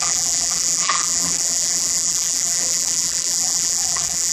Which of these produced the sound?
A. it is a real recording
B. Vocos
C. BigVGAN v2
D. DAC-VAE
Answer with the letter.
C